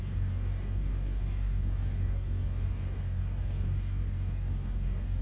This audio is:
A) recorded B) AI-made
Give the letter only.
B